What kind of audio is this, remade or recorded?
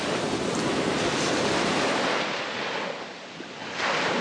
recorded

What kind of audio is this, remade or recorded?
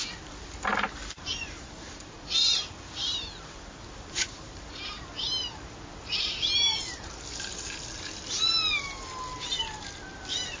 recorded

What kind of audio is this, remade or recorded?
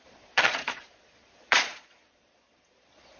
remade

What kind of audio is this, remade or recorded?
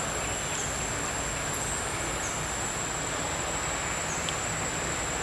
recorded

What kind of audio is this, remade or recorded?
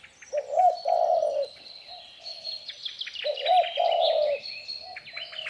recorded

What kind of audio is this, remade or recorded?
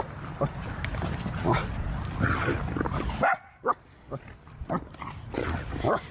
recorded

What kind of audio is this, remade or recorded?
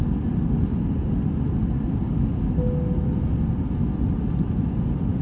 recorded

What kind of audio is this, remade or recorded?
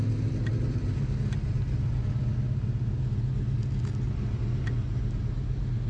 recorded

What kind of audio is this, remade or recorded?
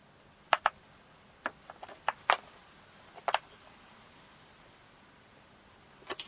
recorded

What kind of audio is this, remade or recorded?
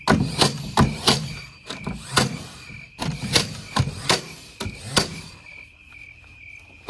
recorded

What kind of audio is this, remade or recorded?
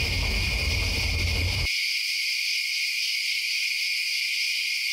recorded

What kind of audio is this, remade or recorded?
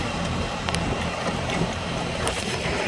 remade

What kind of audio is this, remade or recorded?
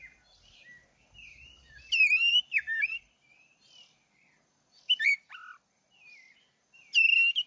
recorded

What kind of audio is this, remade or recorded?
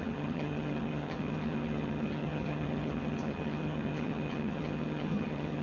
remade